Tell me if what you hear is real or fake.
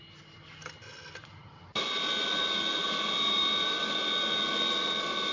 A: real